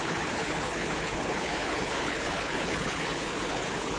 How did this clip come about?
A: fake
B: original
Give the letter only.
A